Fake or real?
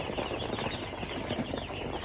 fake